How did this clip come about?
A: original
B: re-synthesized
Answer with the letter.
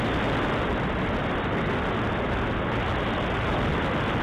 A